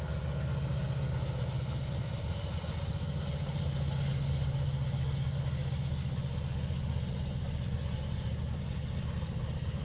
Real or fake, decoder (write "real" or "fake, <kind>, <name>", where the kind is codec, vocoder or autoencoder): real